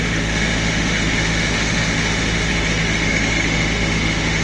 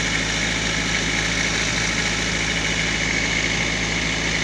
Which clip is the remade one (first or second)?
first